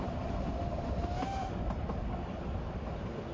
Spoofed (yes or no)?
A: no